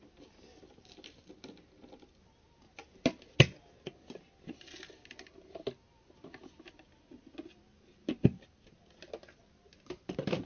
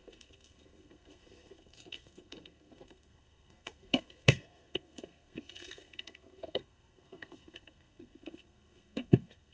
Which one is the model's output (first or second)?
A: second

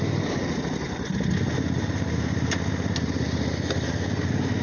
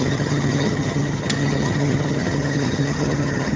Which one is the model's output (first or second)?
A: second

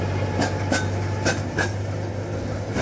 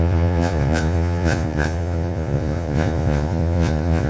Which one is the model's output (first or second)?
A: second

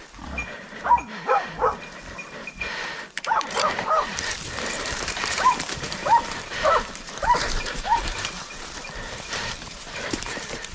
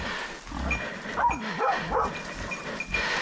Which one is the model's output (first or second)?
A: first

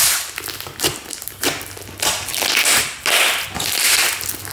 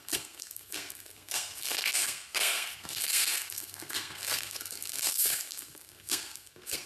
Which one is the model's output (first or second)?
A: second